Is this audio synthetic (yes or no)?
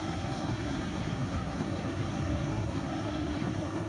yes